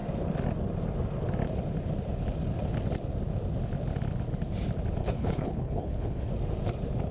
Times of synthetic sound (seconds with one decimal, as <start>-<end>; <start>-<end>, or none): 5.0-6.3